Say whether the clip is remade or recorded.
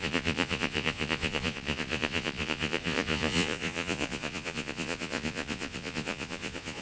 remade